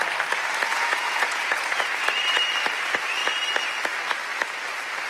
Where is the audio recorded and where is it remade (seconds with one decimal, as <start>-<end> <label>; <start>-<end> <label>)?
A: 0.0-0.7 recorded; 0.7-1.9 remade; 1.9-5.1 recorded